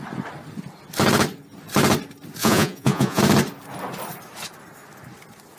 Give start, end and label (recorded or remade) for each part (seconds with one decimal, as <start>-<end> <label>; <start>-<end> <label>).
0.0-2.4 recorded; 2.4-3.2 remade; 3.2-5.6 recorded